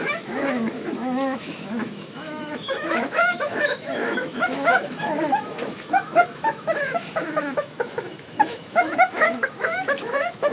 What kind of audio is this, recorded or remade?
remade